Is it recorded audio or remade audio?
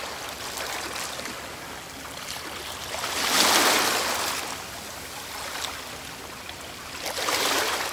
recorded